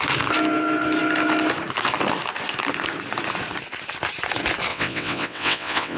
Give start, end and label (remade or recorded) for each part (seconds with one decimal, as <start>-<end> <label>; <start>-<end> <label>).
0.0-4.7 recorded; 4.7-6.0 remade